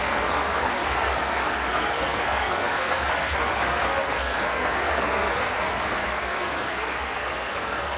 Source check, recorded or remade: remade